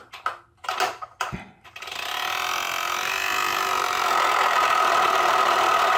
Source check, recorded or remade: recorded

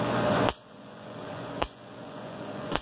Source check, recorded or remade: remade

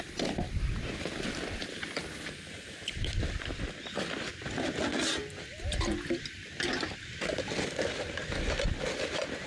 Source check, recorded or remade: recorded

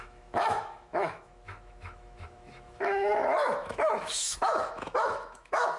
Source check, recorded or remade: remade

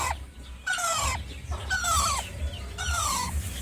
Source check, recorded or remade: remade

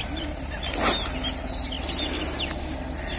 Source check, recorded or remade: recorded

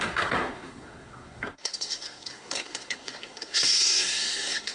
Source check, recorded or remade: remade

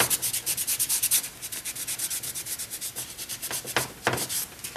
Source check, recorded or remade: recorded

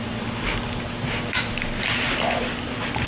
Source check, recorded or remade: recorded